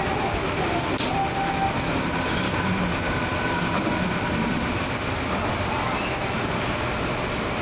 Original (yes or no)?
yes